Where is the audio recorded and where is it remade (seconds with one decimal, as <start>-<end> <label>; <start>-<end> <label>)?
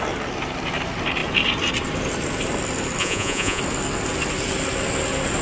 0.0-3.0 recorded; 3.0-3.6 remade; 3.6-5.4 recorded